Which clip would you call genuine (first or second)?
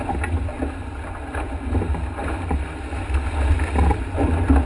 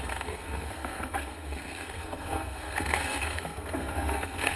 first